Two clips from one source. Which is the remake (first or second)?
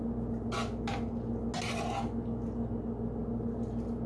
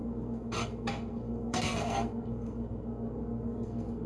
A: second